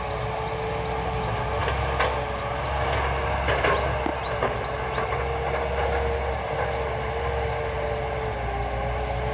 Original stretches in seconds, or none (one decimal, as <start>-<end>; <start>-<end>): 0.0-9.3